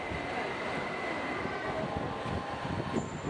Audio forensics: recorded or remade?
recorded